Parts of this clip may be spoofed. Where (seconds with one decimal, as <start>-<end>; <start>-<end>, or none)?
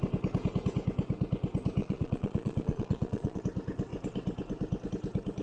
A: 1.8-3.4